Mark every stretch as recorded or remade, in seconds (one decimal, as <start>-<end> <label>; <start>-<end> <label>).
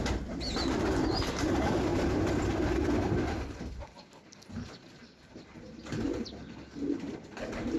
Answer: 0.0-7.8 recorded